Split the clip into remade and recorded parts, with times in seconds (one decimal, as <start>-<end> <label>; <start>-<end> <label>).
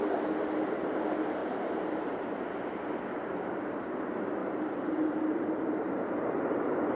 0.0-1.4 recorded; 1.4-2.2 remade; 2.2-4.4 recorded; 4.4-6.3 remade; 6.3-7.0 recorded